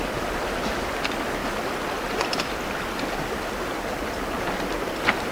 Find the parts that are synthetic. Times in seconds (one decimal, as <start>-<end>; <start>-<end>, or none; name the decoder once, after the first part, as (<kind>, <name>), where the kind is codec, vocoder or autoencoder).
none